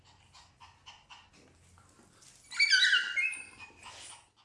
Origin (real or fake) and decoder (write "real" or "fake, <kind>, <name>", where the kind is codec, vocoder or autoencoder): real